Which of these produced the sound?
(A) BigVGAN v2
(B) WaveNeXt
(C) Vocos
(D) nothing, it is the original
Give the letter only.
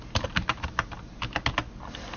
D